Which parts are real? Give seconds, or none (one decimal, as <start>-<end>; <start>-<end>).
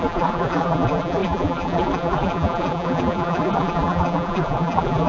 none